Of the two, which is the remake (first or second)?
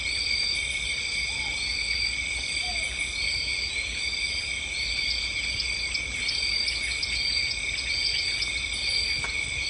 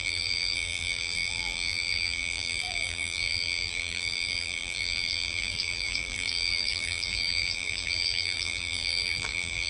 second